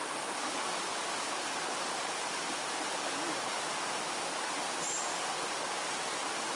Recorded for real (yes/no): yes